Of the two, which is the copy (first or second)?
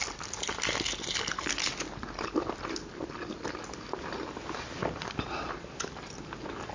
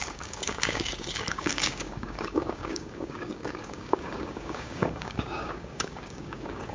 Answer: second